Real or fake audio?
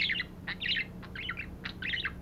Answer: real